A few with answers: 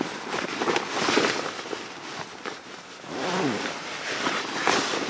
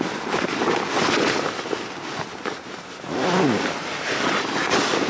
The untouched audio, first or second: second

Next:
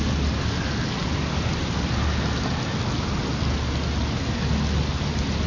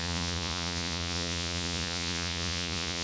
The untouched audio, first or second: first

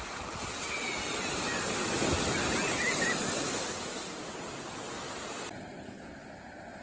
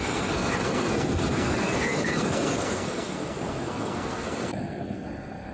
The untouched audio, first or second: first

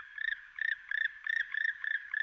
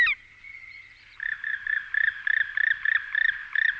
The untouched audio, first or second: second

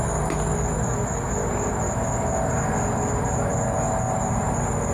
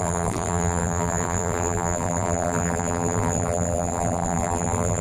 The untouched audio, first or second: first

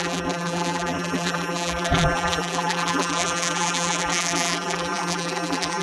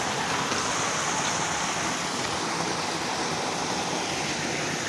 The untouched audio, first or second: second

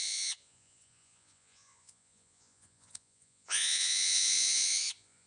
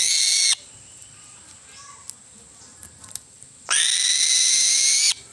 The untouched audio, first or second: second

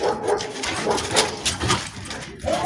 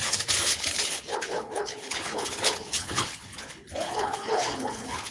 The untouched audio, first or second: first